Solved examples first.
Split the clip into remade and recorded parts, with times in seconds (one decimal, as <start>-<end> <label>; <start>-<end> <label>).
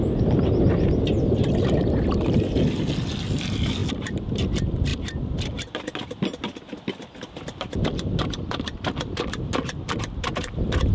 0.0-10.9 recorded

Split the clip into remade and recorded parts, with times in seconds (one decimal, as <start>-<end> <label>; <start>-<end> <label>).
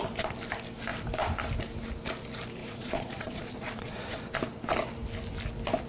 0.0-2.6 recorded; 2.6-4.2 remade; 4.2-5.9 recorded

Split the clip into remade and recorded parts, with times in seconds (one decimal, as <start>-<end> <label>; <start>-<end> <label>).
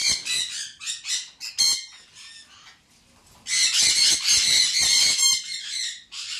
0.0-6.4 recorded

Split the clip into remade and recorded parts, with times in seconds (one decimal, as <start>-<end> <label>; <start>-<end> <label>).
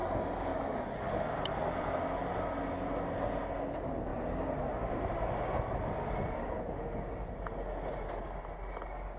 0.0-9.2 recorded